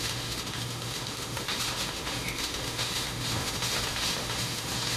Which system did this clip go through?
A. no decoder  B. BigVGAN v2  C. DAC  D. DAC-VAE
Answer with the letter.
D